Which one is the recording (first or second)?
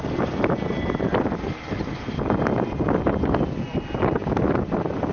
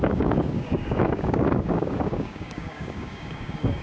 first